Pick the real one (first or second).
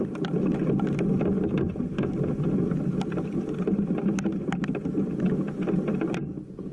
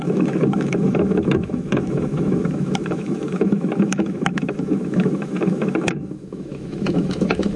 first